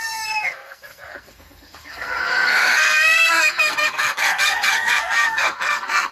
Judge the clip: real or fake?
fake